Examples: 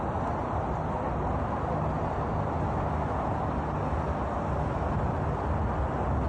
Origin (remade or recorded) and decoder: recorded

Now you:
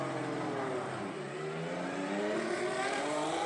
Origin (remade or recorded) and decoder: recorded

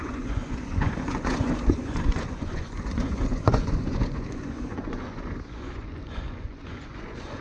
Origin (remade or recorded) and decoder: remade, vocoder, Vocos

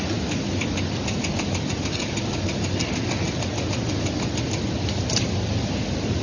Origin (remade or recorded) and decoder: recorded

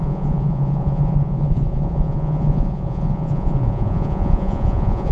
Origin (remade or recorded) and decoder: remade, vocoder, Vocos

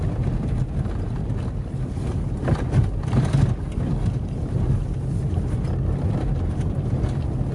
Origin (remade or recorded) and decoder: recorded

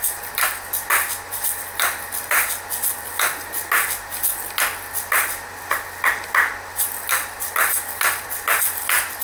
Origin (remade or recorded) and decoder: recorded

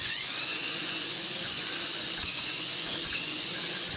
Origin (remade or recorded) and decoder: remade, vocoder, Vocos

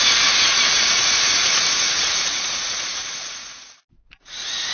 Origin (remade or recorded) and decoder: remade, vocoder, Vocos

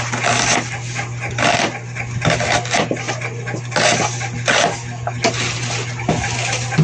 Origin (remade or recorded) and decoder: recorded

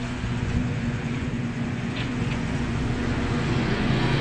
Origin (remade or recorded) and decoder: remade, vocoder, Vocos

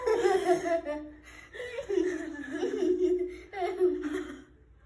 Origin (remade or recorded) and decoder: recorded